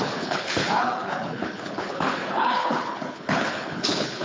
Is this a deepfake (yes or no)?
yes